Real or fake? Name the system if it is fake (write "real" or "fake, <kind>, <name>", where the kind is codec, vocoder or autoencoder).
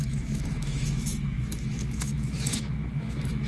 fake, autoencoder, DAC-VAE